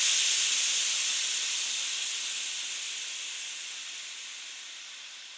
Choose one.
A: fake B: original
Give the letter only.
B